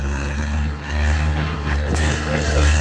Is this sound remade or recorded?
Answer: remade